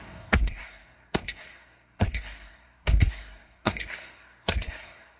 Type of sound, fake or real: fake